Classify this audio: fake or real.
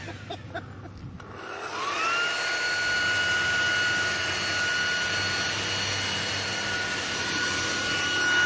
real